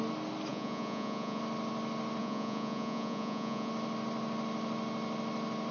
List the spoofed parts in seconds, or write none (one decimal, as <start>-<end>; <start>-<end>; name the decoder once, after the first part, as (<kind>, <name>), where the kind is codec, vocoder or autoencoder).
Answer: 0.5-1.4 (vocoder, Vocos); 2.2-3.7